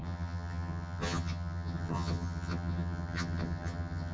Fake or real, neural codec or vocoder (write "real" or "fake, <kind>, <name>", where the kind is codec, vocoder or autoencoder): fake, vocoder, HiFi-GAN